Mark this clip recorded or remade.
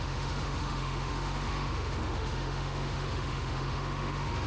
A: remade